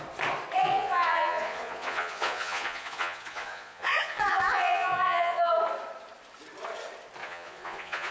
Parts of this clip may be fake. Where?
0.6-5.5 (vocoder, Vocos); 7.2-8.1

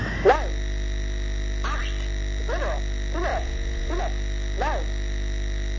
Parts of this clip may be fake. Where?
3.3-4.0 (vocoder, Vocos)

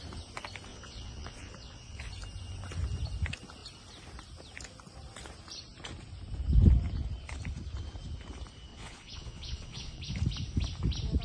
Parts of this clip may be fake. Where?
0.7-2.1 (vocoder, Vocos); 8.7-10.0

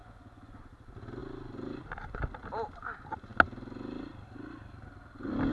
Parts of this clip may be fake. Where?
0.0-0.6 (vocoder, Vocos)

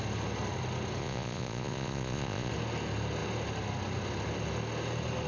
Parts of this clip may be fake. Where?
1.0-2.5 (vocoder, Vocos)

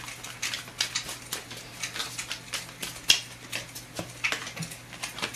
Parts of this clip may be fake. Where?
none